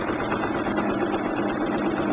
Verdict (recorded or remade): recorded